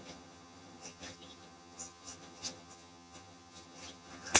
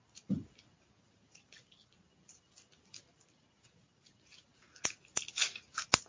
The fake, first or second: first